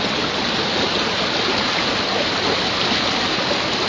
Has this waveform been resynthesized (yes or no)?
no